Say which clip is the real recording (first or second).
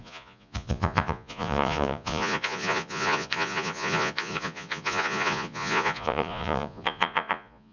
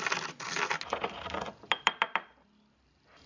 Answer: second